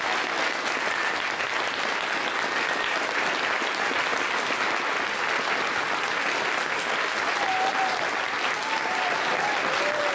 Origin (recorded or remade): recorded